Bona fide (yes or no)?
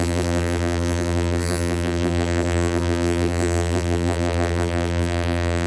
no